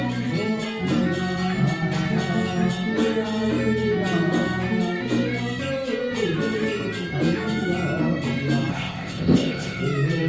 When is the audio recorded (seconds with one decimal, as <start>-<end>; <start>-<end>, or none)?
0.0-8.7; 9.8-10.3